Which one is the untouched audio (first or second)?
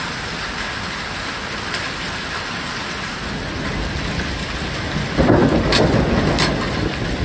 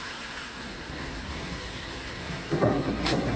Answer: first